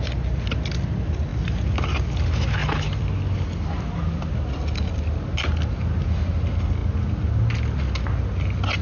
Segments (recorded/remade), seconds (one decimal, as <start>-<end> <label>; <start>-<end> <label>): 0.0-1.3 recorded; 1.3-2.0 remade; 2.0-8.8 recorded